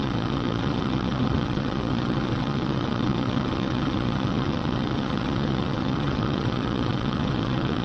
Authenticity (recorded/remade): remade